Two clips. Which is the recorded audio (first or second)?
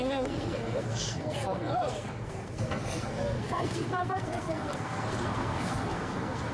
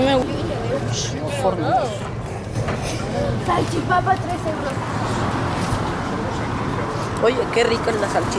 second